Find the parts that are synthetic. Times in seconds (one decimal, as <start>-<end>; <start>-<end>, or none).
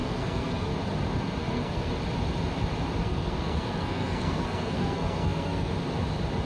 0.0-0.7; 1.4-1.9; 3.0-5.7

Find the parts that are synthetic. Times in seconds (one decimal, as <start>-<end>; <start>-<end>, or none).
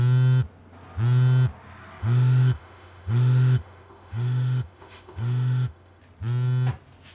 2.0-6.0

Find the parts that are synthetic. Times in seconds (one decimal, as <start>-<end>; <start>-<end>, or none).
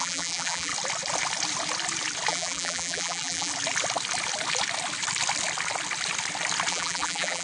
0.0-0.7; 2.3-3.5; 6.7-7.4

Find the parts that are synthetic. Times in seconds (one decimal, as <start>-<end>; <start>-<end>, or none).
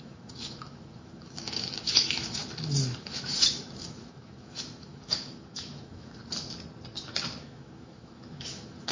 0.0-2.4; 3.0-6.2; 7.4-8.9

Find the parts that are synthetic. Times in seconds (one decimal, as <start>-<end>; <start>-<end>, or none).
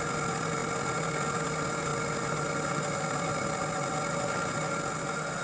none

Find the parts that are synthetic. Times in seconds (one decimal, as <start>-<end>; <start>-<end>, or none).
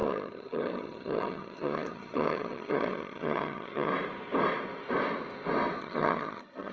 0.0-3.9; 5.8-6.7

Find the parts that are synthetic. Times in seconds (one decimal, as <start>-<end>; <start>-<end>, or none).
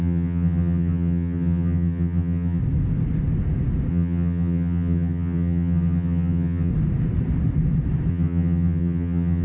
0.0-2.6; 3.9-6.7; 8.1-9.4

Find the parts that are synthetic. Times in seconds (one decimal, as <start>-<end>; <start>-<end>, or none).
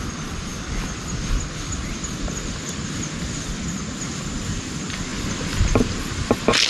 none